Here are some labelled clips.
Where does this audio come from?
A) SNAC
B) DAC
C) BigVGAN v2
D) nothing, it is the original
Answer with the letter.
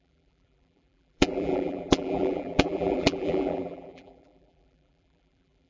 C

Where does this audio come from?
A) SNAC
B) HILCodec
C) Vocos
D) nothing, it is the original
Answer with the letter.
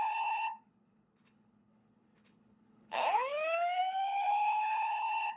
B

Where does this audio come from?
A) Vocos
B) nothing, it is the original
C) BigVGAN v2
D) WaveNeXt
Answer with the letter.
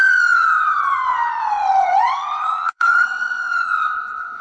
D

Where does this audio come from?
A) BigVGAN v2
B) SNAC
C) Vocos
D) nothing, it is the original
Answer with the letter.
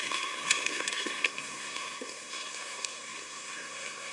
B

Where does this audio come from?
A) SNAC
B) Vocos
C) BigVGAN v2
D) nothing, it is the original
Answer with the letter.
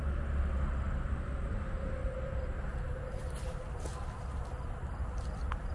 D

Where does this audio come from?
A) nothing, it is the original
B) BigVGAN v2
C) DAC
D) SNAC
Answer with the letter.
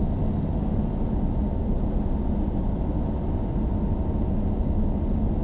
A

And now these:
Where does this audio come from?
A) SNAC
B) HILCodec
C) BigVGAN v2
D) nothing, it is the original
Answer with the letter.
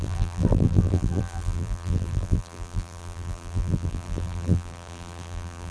C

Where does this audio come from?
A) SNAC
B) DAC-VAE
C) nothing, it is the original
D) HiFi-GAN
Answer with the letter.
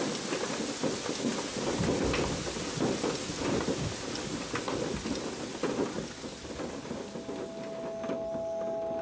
C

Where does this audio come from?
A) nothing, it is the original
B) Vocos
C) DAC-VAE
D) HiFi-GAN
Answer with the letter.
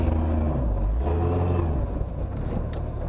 A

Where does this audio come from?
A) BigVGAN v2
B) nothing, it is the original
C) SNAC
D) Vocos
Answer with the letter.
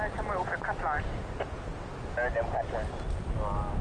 B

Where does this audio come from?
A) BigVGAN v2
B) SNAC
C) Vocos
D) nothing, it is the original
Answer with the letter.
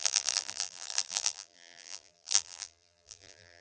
A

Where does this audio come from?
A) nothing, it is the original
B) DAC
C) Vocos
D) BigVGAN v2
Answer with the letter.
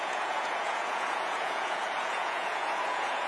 C